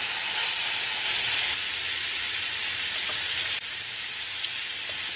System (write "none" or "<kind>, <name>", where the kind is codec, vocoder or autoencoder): none